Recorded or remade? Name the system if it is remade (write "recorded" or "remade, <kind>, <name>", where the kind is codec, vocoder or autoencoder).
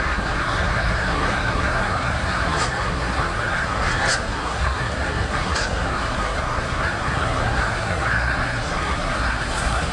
remade, codec, SNAC